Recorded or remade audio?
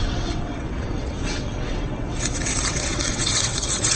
remade